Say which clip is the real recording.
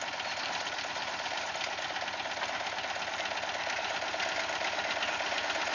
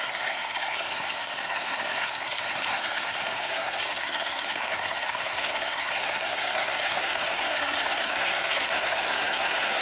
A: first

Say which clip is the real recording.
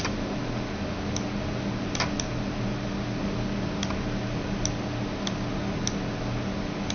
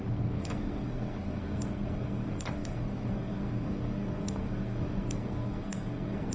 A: first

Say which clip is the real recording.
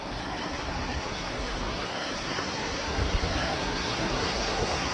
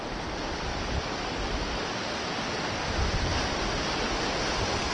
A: second